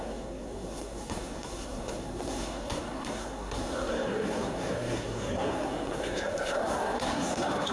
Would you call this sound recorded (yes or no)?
no